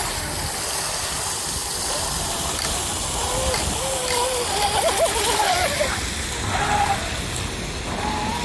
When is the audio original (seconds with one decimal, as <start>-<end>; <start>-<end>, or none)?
0.0-8.4